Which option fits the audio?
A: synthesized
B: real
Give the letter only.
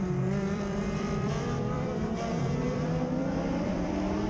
A